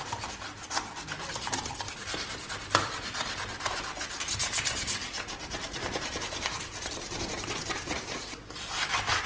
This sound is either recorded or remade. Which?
remade